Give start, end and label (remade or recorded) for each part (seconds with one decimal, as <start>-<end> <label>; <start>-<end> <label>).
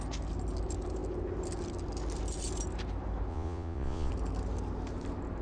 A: 0.0-3.3 recorded; 3.3-4.1 remade; 4.1-5.4 recorded